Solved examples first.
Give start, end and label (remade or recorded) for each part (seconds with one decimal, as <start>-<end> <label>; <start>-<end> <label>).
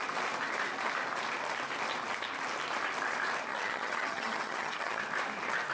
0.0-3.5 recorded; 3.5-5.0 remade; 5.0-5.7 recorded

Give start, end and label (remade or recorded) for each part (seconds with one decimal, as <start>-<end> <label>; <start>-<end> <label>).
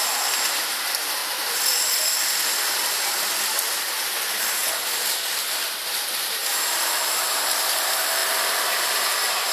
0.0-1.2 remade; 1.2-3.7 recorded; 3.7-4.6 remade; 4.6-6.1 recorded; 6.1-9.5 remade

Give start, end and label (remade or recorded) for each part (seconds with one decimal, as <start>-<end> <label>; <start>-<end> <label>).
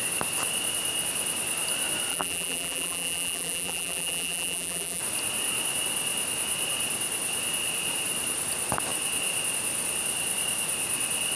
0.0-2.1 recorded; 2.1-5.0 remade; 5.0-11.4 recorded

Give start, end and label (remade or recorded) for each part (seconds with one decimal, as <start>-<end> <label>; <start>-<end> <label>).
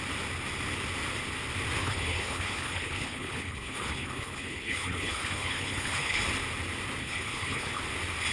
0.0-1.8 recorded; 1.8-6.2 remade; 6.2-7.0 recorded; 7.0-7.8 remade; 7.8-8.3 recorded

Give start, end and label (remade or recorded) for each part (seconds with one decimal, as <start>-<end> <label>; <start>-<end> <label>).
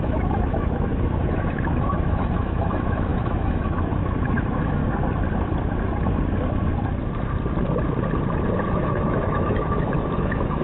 0.0-4.8 remade; 4.8-8.7 recorded; 8.7-10.6 remade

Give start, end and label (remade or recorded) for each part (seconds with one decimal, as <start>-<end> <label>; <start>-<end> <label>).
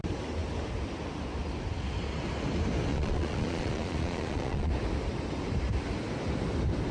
0.0-2.9 recorded; 2.9-4.7 remade; 4.7-6.9 recorded